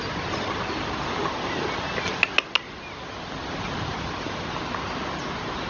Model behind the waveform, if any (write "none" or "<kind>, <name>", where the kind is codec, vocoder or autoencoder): none